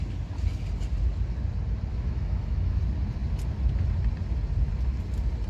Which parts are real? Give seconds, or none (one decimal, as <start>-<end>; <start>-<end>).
0.0-1.9; 2.8-5.5